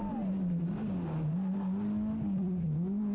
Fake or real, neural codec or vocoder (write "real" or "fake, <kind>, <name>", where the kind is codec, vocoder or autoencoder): real